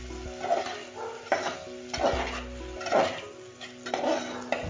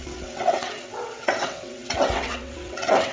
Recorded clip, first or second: first